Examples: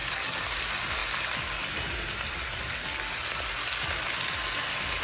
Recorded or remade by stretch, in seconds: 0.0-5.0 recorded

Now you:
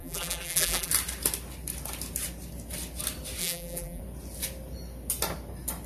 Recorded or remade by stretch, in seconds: 0.0-0.9 remade; 0.9-3.4 recorded; 3.4-4.0 remade; 4.0-5.9 recorded

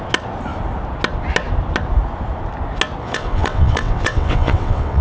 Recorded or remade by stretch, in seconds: 0.0-3.0 recorded; 3.0-5.0 remade

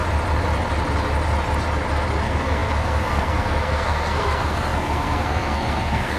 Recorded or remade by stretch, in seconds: 0.0-2.2 recorded; 2.2-6.2 remade

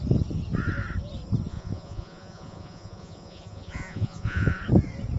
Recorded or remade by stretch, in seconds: 0.0-1.5 recorded; 1.5-4.6 remade; 4.6-5.2 recorded

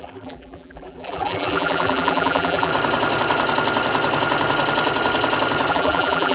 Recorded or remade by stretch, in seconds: 0.0-2.7 remade; 2.7-5.7 recorded; 5.7-6.3 remade

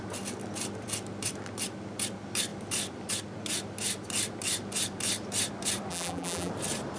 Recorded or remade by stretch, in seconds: 0.0-5.9 recorded; 5.9-6.5 remade; 6.5-7.0 recorded

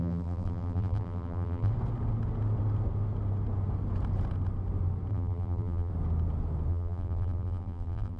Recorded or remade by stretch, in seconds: 0.0-1.7 remade; 1.7-5.1 recorded; 5.1-5.9 remade; 5.9-6.7 recorded; 6.7-8.2 remade